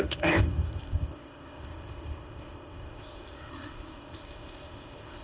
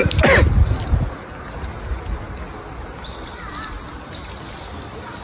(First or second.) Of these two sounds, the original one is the second